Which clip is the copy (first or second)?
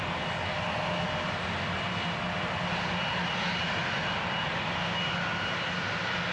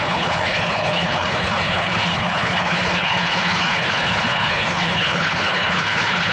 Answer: second